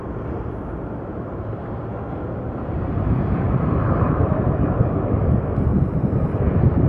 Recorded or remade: remade